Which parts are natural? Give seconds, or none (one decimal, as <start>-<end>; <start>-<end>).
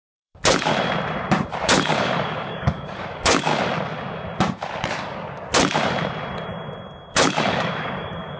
0.7-1.6; 3.5-4.9; 5.5-7.1